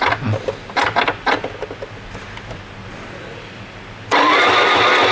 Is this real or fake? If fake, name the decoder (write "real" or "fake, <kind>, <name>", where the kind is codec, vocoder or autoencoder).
real